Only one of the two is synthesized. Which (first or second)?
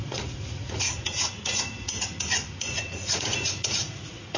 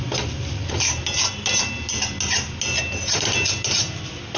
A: first